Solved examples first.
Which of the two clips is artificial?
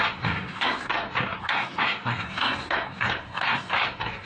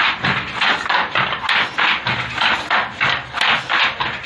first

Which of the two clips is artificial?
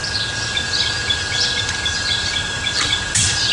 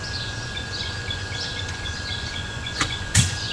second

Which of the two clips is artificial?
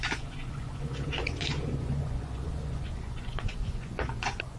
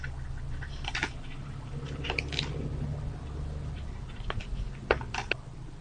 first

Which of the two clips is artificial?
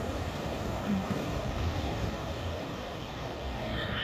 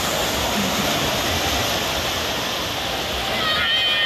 first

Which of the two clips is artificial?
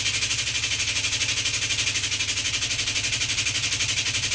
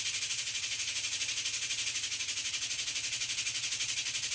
second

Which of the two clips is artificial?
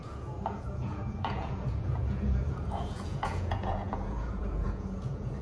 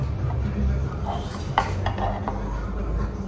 first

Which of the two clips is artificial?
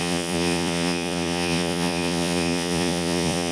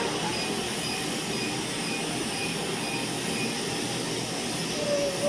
first